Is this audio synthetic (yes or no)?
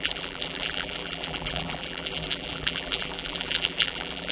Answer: yes